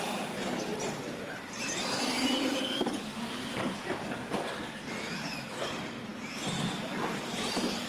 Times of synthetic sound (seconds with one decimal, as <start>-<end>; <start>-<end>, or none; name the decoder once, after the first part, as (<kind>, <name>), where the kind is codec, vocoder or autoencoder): none